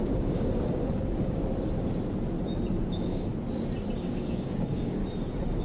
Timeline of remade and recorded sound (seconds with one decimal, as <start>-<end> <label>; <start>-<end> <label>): 0.0-1.4 remade; 1.4-2.9 recorded; 2.9-3.3 remade; 3.3-4.0 recorded; 4.0-5.0 remade; 5.0-5.6 recorded